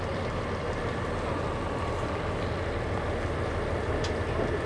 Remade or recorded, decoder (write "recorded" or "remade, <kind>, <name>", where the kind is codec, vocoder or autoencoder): recorded